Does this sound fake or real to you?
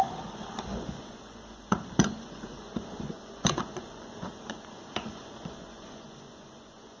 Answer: fake